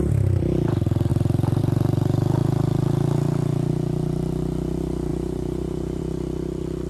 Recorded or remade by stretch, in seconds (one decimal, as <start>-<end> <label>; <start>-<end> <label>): 0.0-5.1 recorded; 5.1-6.0 remade; 6.0-6.9 recorded